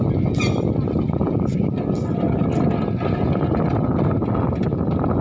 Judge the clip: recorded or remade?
recorded